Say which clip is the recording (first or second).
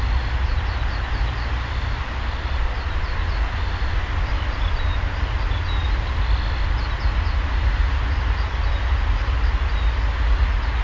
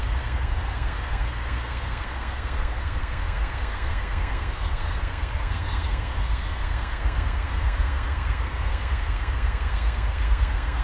first